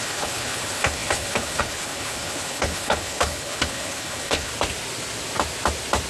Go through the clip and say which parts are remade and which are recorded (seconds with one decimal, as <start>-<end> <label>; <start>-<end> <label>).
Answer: 0.0-4.5 remade; 4.5-6.1 recorded